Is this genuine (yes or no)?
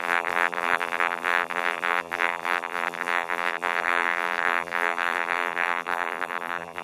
no